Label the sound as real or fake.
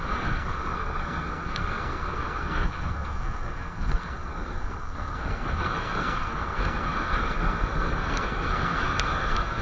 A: fake